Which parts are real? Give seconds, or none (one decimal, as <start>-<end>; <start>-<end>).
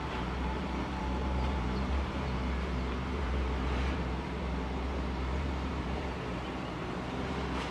none